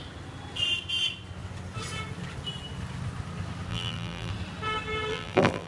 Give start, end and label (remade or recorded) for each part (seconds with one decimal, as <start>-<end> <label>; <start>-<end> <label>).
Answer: 0.0-3.7 recorded; 3.7-4.3 remade; 4.3-5.1 recorded; 5.1-5.7 remade